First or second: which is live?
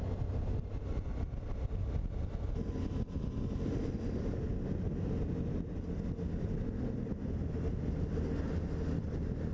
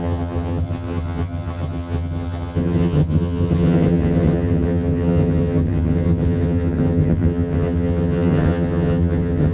first